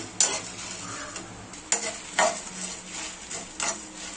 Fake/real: real